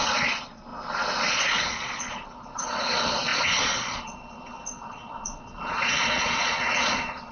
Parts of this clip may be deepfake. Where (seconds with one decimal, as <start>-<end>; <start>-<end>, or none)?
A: 0.0-0.7; 1.3-7.3